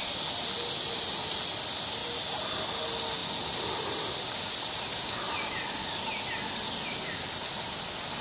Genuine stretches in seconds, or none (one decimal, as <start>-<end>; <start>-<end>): 0.0-8.2